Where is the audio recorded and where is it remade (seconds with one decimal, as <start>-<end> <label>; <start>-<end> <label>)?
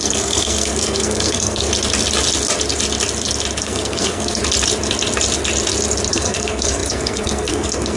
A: 0.0-1.7 remade; 1.7-3.6 recorded; 3.6-4.4 remade; 4.4-6.1 recorded; 6.1-8.0 remade